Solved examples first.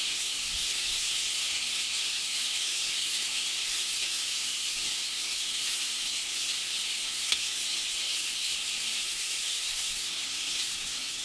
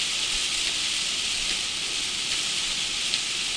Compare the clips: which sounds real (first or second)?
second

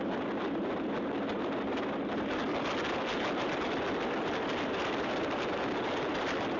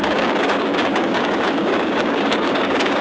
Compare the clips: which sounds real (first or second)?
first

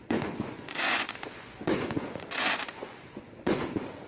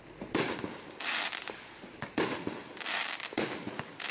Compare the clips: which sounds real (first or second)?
second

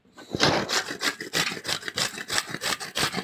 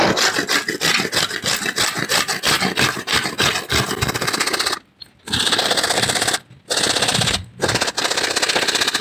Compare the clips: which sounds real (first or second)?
second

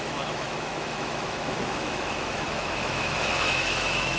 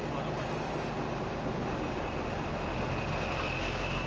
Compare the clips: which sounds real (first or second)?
second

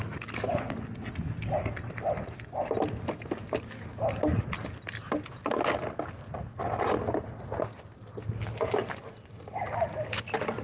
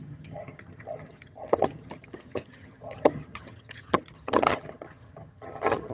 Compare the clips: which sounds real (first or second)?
first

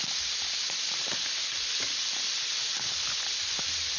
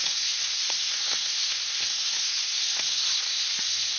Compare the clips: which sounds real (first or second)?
first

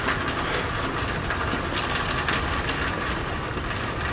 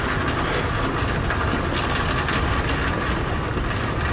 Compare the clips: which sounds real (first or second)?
second